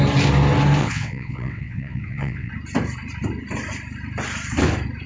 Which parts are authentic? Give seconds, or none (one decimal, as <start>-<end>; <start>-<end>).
0.0-0.8; 2.5-5.1